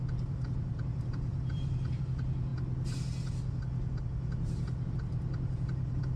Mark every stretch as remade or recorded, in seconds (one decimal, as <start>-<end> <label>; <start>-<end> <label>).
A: 0.0-2.5 remade; 2.5-4.9 recorded; 4.9-6.2 remade